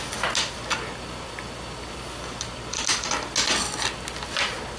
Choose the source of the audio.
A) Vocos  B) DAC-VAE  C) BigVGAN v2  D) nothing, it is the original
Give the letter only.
D